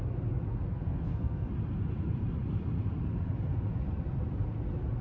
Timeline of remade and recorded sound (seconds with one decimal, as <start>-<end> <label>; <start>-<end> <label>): 0.0-0.5 recorded; 0.5-1.5 remade; 1.5-5.0 recorded